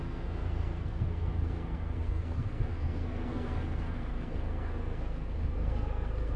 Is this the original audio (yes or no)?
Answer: no